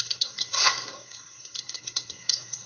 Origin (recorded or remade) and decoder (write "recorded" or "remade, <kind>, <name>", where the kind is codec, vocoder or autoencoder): remade, codec, SNAC